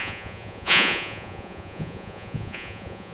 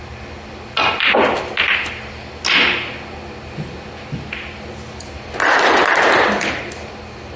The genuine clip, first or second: second